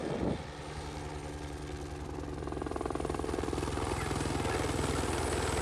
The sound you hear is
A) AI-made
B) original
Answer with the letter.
B